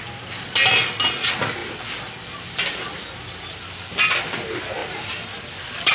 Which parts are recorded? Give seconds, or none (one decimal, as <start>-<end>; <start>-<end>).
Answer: 0.0-5.9